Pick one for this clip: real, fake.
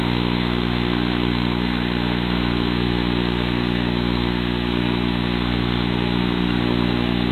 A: fake